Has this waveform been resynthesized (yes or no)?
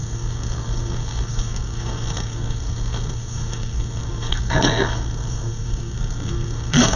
yes